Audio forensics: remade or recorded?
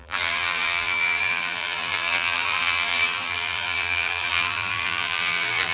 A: remade